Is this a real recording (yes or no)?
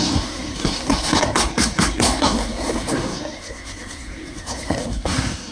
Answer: no